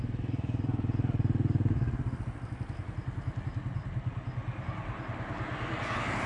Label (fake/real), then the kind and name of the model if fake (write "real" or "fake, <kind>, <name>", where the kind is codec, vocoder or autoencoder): real